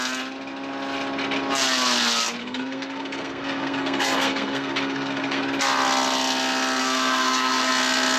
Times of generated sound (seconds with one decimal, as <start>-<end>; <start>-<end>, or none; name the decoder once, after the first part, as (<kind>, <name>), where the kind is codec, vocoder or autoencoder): 2.4-5.4 (codec, SNAC); 6.8-7.7